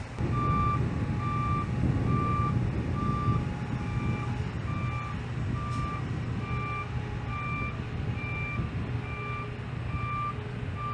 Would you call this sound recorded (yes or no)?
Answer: yes